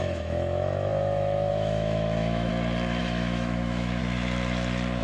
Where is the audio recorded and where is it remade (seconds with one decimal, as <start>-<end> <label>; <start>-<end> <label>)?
0.0-2.5 remade; 2.5-3.0 recorded; 3.0-4.0 remade; 4.0-5.0 recorded